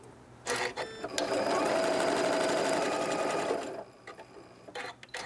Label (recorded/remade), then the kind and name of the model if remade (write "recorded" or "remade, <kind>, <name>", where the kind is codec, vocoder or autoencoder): recorded